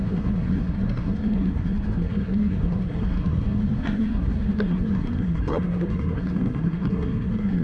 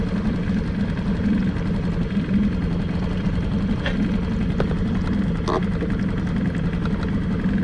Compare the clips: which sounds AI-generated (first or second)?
first